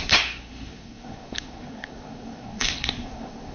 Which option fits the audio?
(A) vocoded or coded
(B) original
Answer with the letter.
A